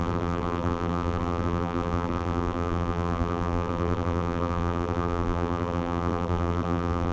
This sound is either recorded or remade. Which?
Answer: remade